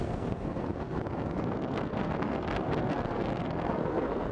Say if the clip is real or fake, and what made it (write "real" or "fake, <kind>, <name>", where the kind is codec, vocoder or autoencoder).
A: fake, codec, SNAC